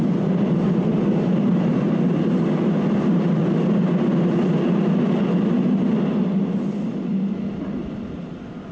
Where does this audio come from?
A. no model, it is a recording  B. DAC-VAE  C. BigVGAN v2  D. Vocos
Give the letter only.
A